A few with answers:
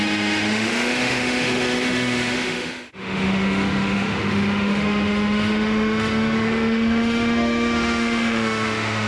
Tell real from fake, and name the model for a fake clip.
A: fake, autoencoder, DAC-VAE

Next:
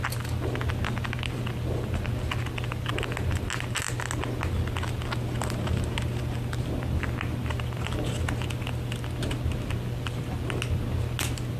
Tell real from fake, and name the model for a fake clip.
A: real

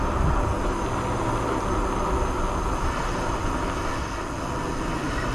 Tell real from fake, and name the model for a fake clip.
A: real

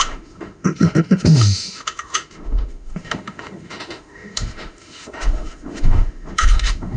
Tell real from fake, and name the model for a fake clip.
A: fake, autoencoder, DAC-VAE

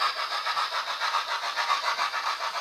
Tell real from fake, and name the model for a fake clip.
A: real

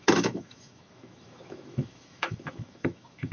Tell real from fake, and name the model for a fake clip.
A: fake, autoencoder, DAC-VAE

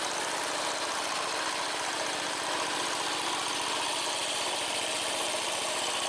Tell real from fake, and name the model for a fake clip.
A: real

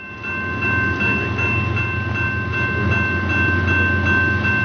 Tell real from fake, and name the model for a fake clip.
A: real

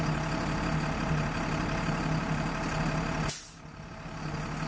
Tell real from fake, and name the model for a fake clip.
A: real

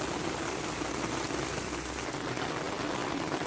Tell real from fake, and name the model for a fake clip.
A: real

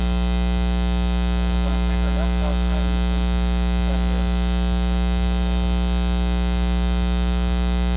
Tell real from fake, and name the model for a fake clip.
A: fake, autoencoder, DAC-VAE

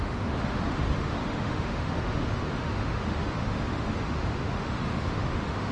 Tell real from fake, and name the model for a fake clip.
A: fake, autoencoder, DAC-VAE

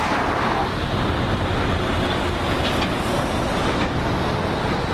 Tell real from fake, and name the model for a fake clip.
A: real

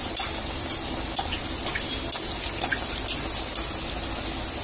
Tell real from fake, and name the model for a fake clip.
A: real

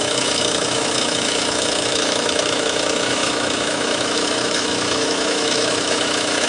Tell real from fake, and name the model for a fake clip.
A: fake, autoencoder, DAC-VAE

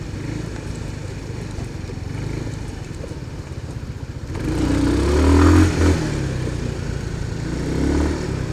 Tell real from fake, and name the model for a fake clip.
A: real